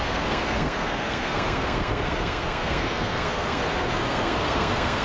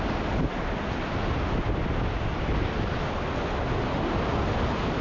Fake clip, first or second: first